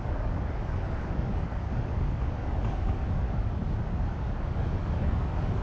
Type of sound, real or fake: fake